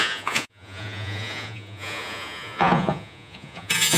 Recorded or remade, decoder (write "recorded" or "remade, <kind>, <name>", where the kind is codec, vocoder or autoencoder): remade, vocoder, Vocos